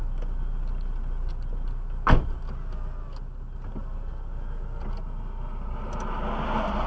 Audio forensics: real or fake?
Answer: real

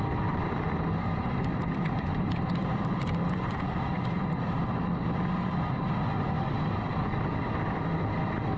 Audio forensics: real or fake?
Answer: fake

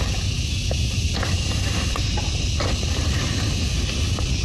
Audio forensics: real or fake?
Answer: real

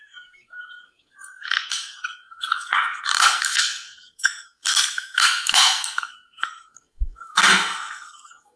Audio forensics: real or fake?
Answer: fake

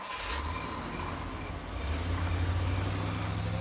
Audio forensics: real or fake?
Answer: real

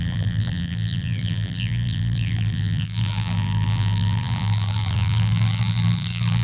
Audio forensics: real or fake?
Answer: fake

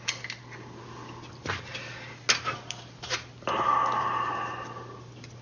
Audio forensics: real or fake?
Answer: real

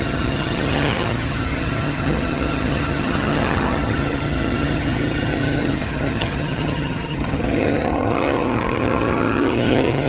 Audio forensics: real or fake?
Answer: fake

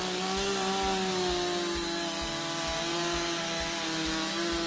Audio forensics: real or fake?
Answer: real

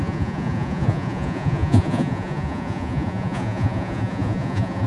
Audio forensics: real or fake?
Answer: fake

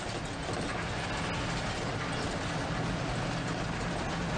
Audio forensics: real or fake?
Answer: real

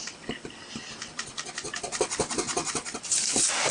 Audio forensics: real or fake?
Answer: real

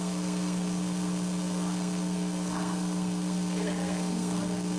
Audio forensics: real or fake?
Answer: fake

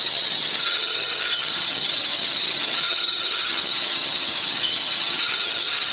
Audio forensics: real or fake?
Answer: fake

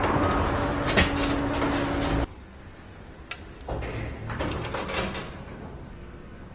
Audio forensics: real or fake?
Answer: real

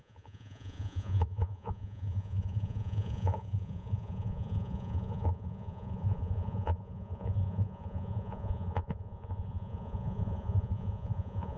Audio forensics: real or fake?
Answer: fake